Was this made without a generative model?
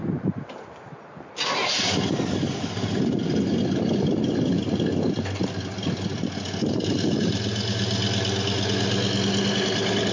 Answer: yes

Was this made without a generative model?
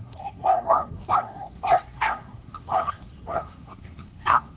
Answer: no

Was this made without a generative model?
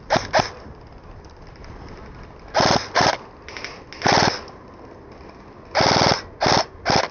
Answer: yes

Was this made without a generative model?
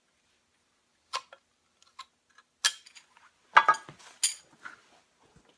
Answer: yes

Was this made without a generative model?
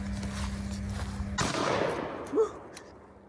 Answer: yes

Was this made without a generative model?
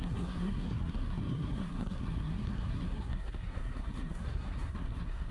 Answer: no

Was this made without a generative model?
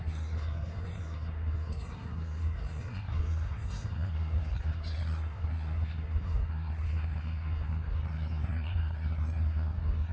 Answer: no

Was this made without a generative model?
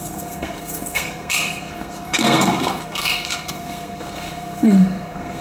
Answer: no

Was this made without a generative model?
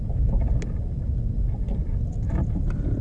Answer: yes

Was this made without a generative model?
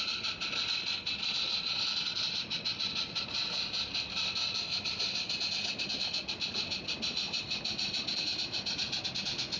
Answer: yes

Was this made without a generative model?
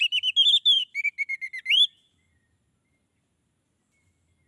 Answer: yes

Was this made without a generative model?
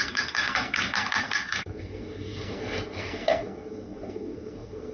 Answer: no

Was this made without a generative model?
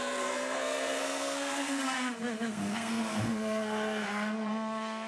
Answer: no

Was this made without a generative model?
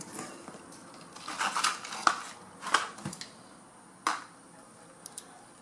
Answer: yes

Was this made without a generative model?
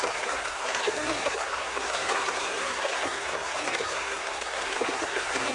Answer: no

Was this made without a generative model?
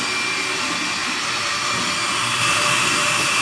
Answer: yes